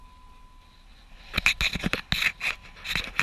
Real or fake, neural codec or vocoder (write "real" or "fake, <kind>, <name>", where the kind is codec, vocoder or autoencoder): real